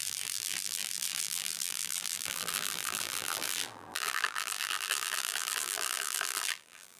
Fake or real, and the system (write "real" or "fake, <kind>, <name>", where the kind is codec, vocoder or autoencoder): fake, vocoder, BigVGAN v2